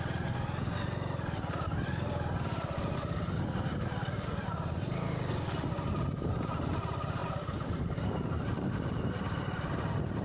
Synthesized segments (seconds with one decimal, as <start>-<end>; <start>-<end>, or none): 7.2-9.0